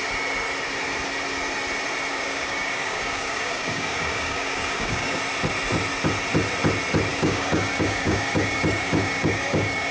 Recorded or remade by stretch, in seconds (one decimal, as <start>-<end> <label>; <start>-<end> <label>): 0.0-2.1 recorded; 2.1-5.2 remade; 5.2-7.1 recorded; 7.1-9.9 remade